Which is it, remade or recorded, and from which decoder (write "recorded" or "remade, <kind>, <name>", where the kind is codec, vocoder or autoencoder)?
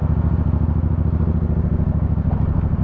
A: recorded